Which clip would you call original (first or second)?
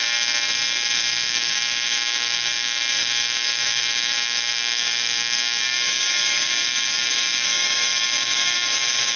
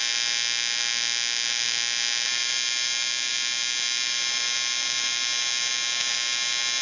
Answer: second